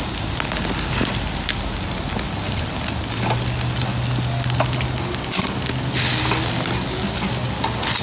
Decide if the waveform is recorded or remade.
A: recorded